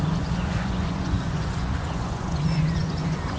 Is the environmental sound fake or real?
fake